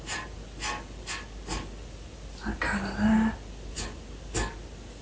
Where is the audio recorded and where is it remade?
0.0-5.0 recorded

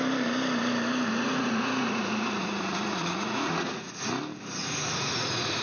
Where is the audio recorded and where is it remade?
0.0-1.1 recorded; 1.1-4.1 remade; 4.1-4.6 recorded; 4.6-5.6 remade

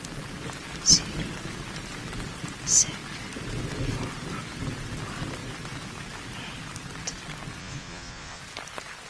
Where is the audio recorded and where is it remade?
0.0-7.6 recorded; 7.6-8.4 remade; 8.4-9.1 recorded

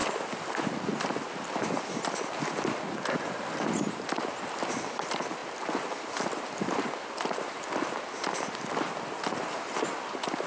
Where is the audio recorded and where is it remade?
0.0-10.5 recorded

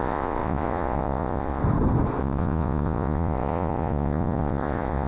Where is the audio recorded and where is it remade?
0.0-1.6 remade; 1.6-2.2 recorded; 2.2-5.1 remade